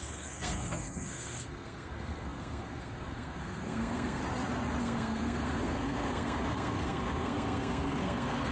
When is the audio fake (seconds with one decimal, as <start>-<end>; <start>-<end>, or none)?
0.0-4.2; 4.8-8.5